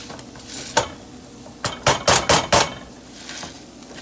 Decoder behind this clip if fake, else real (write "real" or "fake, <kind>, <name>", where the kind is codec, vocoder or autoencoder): real